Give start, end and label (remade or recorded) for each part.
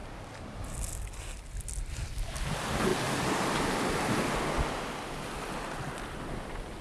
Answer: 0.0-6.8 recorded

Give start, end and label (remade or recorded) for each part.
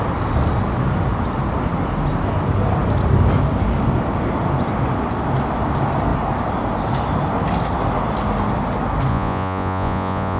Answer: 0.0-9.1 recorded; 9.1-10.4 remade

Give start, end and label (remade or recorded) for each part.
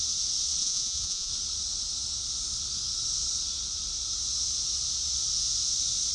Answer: 0.0-0.6 recorded; 0.6-1.3 remade; 1.3-6.1 recorded